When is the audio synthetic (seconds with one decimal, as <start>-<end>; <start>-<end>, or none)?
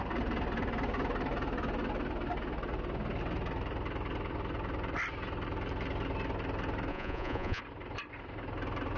6.9-7.6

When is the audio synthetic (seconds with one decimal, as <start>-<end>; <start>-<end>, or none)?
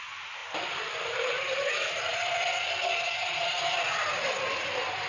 none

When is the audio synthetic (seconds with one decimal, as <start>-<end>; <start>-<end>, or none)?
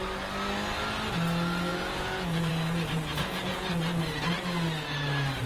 1.7-2.5; 3.1-3.7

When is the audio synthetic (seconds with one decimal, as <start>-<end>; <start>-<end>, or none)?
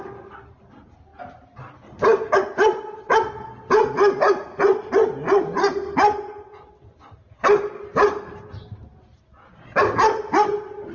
none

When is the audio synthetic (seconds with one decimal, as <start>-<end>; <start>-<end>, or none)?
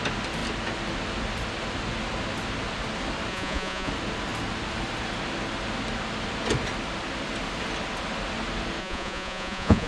3.3-3.9; 8.8-9.9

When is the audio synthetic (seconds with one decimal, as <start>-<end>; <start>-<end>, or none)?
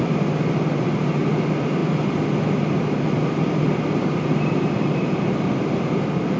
none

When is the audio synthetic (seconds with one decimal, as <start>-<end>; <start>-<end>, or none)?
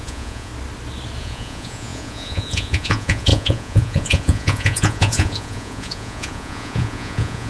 0.0-0.5; 1.2-7.5